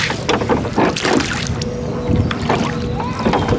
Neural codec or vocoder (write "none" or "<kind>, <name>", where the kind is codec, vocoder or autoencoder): none